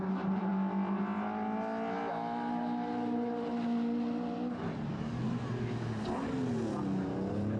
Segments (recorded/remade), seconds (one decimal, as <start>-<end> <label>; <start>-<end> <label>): 0.0-7.6 recorded